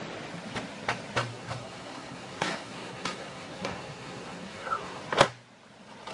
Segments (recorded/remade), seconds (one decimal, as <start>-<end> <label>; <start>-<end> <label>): 0.0-1.3 recorded; 1.3-5.0 remade; 5.0-6.1 recorded